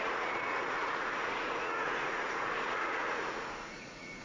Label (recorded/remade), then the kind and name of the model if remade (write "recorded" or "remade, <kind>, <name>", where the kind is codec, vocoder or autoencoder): remade, vocoder, Vocos